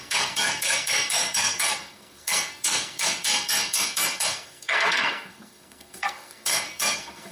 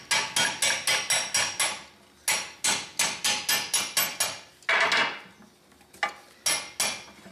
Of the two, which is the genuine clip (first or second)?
second